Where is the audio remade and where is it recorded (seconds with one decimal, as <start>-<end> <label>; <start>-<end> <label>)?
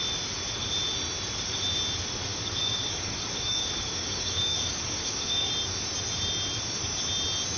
0.0-2.3 recorded; 2.3-5.5 remade; 5.5-7.6 recorded